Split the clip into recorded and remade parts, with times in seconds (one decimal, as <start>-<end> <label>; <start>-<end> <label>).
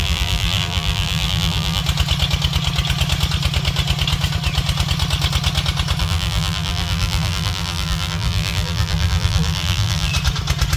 0.0-1.8 remade; 1.8-6.0 recorded; 6.0-10.1 remade; 10.1-10.8 recorded